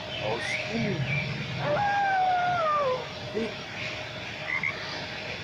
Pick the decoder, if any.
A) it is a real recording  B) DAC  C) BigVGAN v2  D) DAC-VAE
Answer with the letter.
A